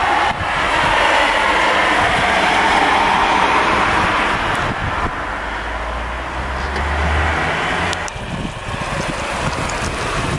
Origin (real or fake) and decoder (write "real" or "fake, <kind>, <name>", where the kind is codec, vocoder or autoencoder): real